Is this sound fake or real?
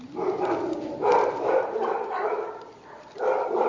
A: real